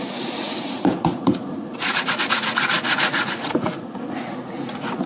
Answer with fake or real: fake